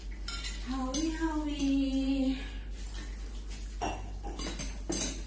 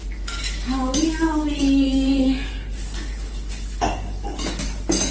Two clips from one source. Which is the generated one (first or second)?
second